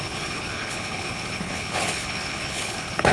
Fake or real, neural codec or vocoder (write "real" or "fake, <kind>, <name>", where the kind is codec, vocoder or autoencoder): fake, codec, HILCodec